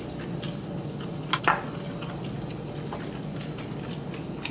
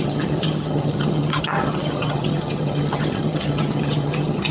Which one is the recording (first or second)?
first